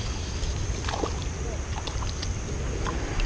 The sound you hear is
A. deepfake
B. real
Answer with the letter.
B